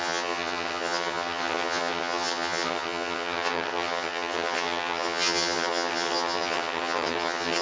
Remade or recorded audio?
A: remade